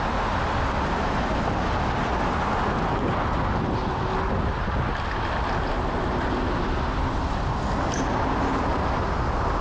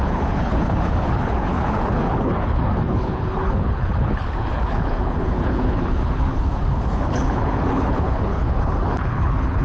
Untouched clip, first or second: first